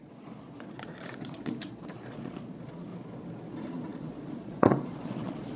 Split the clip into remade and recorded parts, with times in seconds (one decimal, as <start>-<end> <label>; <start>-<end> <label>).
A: 0.0-2.9 remade; 2.9-3.5 recorded; 3.5-5.6 remade